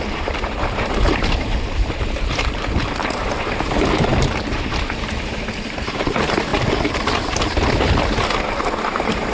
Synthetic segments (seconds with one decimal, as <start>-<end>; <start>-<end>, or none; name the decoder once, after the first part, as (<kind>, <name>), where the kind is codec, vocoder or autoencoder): 0.0-6.5 (vocoder, BigVGAN v2); 8.8-9.3